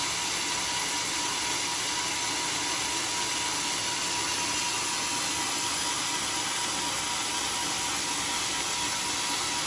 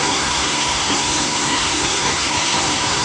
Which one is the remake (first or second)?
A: second